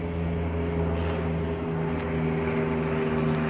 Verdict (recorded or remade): recorded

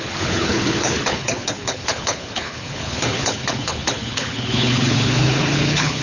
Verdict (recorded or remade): remade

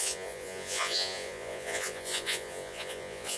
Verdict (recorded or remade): remade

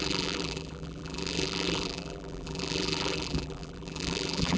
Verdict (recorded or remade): remade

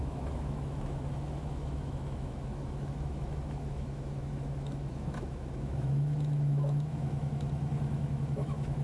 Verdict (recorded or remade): remade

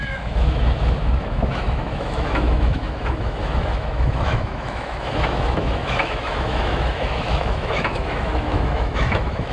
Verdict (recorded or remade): remade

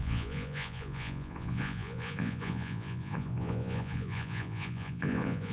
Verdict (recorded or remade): remade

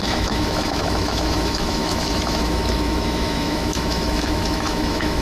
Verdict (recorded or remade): remade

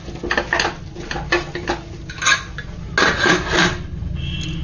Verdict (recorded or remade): recorded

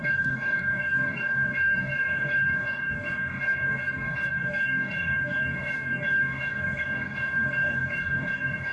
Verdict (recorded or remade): remade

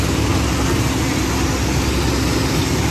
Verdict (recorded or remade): recorded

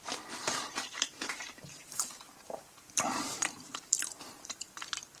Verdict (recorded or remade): remade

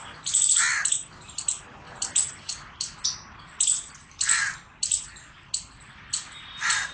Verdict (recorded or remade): recorded